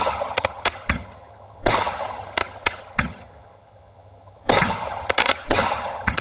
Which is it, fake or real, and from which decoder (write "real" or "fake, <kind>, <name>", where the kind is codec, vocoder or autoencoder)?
fake, vocoder, HiFi-GAN